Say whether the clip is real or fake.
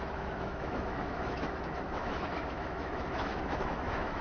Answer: fake